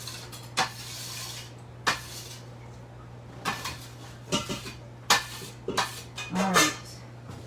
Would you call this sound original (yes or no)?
yes